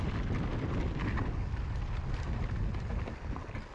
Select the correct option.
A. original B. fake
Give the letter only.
A